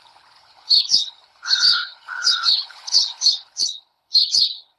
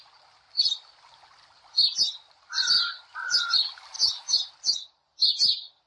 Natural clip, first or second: second